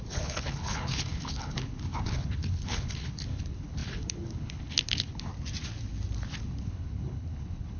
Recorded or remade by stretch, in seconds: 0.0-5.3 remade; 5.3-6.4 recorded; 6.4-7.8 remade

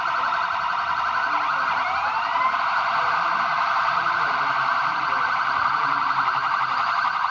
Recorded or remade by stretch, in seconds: 0.0-2.0 recorded; 2.0-4.3 remade; 4.3-4.7 recorded; 4.7-6.6 remade; 6.6-7.3 recorded